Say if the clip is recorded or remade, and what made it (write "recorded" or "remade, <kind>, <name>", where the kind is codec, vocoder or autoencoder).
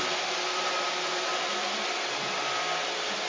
recorded